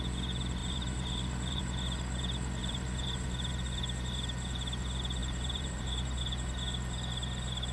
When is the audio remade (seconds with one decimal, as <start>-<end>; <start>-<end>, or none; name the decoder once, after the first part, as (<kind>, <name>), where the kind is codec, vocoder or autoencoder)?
0.6-1.6 (vocoder, BigVGAN v2); 2.6-3.5; 5.2-6.2